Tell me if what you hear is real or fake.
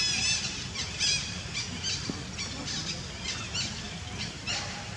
real